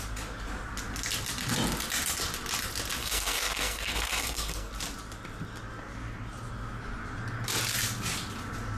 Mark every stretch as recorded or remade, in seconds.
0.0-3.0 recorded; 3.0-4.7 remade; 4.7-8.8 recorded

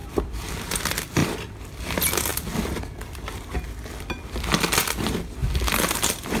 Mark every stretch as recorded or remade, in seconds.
0.0-0.5 remade; 0.5-5.4 recorded; 5.4-6.4 remade

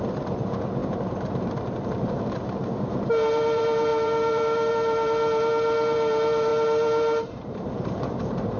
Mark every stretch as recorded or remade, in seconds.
0.0-8.6 remade

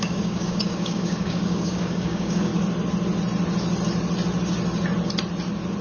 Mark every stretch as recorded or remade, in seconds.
0.0-2.5 remade; 2.5-5.8 recorded